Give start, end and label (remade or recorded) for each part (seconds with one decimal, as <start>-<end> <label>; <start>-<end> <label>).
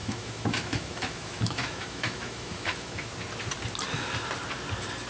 0.0-3.1 remade; 3.1-5.1 recorded